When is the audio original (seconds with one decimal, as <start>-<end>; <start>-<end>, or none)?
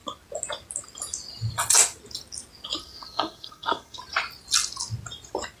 0.0-2.8; 4.0-5.6